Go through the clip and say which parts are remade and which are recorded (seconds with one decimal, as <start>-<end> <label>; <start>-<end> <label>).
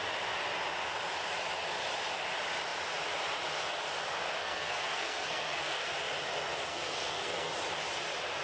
0.0-4.4 recorded; 4.4-5.9 remade; 5.9-6.7 recorded; 6.7-7.5 remade; 7.5-8.4 recorded